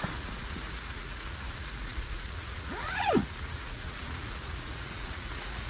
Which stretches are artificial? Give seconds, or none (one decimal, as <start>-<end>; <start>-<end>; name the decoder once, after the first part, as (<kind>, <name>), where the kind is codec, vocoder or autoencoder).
0.0-5.7 (vocoder, Vocos)